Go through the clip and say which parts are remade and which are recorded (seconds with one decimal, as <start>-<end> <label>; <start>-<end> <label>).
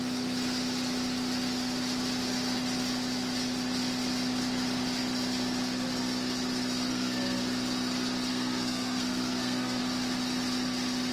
0.0-6.9 recorded; 6.9-7.4 remade; 7.4-8.3 recorded; 8.3-9.8 remade; 9.8-11.1 recorded